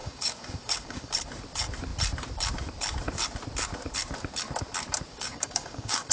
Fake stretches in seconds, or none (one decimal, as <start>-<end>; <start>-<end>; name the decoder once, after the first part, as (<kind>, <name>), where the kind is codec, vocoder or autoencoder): 0.0-1.1 (codec, DAC); 5.1-6.1